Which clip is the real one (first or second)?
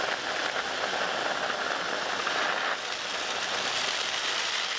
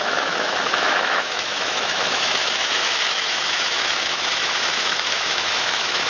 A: first